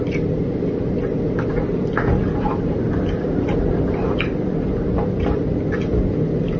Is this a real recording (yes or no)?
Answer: yes